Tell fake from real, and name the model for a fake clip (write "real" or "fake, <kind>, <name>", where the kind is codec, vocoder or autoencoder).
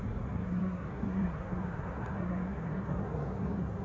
fake, codec, SNAC